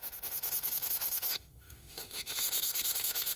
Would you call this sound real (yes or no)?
no